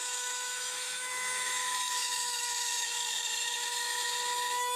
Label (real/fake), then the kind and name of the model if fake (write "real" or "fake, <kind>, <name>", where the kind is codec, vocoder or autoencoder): fake, autoencoder, DAC-VAE